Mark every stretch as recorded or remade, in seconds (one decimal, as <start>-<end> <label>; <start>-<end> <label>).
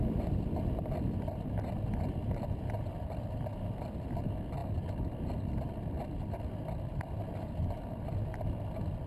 0.0-9.1 recorded